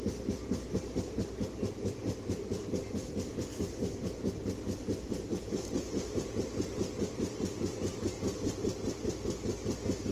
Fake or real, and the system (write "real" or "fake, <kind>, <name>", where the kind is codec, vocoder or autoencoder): real